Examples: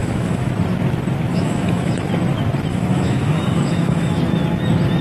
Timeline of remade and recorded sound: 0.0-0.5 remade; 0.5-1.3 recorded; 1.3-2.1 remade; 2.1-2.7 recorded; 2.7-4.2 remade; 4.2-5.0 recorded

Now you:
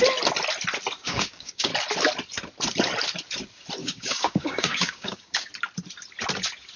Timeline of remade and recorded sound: 0.0-1.0 recorded; 1.0-1.7 remade; 1.7-3.8 recorded; 3.8-5.5 remade; 5.5-6.8 recorded